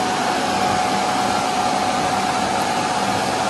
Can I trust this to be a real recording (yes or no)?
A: yes